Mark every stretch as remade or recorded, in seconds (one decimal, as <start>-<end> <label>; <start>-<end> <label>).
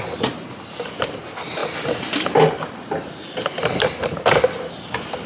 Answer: 0.0-5.3 recorded